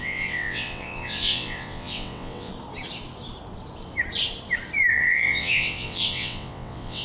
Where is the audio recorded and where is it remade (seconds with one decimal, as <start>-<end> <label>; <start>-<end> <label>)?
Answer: 0.0-2.5 remade; 2.5-4.9 recorded; 4.9-7.0 remade